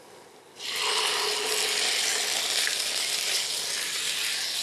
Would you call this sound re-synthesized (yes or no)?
no